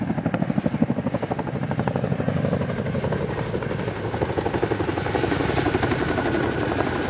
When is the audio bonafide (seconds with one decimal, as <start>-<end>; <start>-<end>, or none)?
0.0-7.1